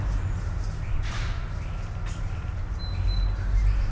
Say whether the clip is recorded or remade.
recorded